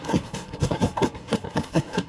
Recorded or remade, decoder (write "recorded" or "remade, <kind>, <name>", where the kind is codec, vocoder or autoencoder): remade, codec, SNAC